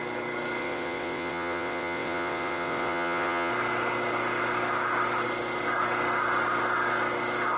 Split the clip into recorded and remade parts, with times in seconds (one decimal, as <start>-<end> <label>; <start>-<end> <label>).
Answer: 0.0-0.6 recorded; 0.6-3.5 remade; 3.5-7.6 recorded